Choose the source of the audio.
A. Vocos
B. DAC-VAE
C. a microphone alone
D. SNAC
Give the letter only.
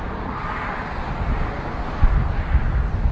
C